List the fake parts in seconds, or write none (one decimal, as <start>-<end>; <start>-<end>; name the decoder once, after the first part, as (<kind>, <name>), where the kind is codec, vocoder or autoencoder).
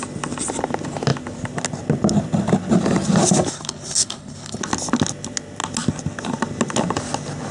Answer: 3.5-4.6 (codec, HILCodec)